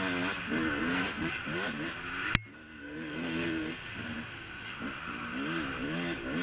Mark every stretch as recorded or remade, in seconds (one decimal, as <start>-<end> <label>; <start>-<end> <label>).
0.0-0.8 recorded; 0.8-1.3 remade; 1.3-2.5 recorded; 2.5-3.9 remade; 3.9-6.4 recorded